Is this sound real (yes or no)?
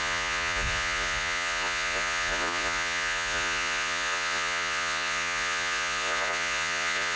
no